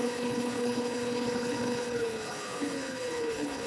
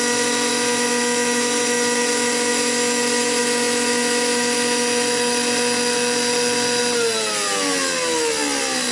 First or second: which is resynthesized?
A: first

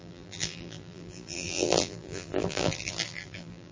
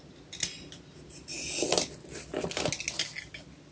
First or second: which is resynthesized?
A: first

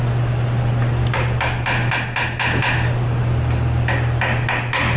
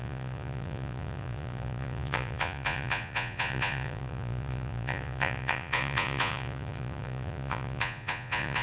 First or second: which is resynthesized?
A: second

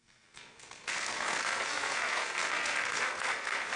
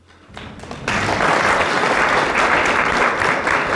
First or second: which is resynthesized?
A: first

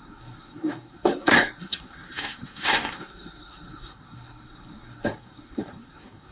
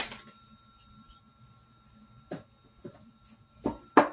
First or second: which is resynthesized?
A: first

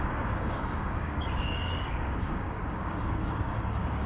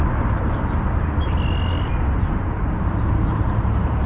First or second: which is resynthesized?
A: first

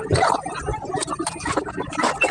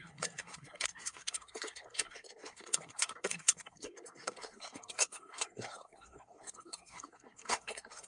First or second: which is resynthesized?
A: second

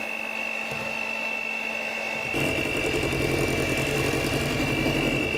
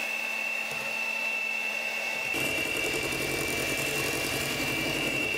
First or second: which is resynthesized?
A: second